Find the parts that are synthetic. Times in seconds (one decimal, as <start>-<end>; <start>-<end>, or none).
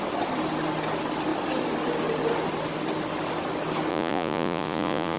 3.9-5.2